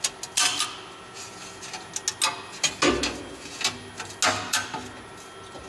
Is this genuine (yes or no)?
yes